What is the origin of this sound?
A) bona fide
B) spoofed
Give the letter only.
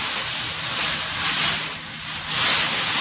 A